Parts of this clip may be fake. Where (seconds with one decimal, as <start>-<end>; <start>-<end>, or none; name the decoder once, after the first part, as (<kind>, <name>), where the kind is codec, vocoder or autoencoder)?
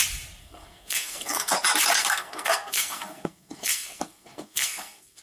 0.4-1.5 (codec, SNAC); 2.0-5.2